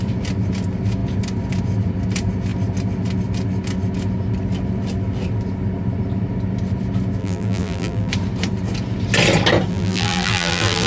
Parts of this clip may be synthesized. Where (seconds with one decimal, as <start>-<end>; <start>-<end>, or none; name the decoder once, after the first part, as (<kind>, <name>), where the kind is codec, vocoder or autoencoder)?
7.2-8.1 (vocoder, BigVGAN v2); 9.7-10.9